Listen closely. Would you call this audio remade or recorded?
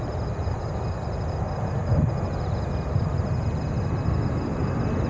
recorded